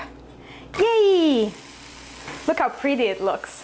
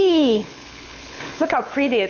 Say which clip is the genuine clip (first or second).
first